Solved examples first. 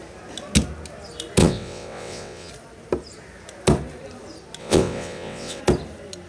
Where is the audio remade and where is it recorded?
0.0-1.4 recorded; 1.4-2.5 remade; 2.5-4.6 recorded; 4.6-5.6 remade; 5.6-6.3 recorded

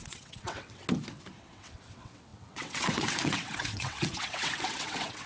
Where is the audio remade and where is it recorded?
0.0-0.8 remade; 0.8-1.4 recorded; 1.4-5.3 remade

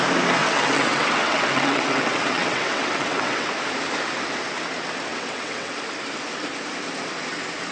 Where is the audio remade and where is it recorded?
0.0-0.4 recorded; 0.4-3.5 remade; 3.5-5.1 recorded; 5.1-5.8 remade; 5.8-7.7 recorded

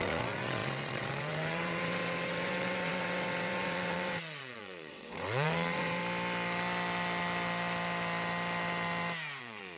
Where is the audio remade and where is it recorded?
0.0-6.0 remade; 6.0-9.4 recorded; 9.4-9.8 remade